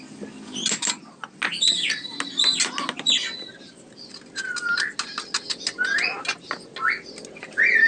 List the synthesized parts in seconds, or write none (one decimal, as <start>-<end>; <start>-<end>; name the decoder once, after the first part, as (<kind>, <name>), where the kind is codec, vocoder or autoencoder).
none